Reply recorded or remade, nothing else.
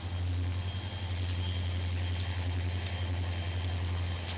recorded